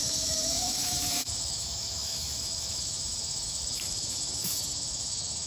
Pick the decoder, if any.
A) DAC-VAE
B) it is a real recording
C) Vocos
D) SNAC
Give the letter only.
A